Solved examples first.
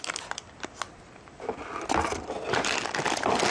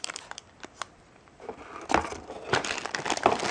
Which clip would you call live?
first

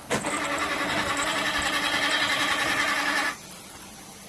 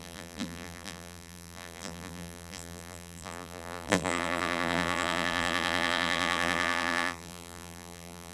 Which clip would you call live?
first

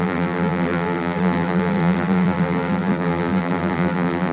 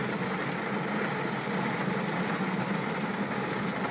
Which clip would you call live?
second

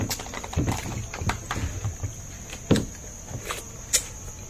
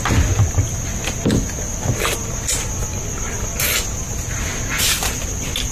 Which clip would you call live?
second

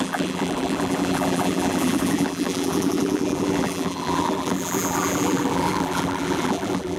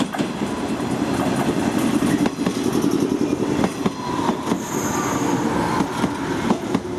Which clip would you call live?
second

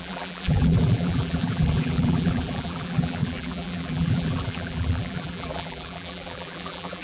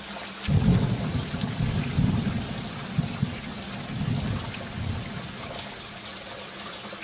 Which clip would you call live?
second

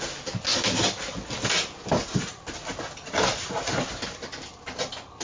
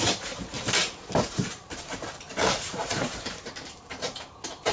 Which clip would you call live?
first